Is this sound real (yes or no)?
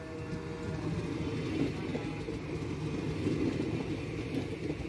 yes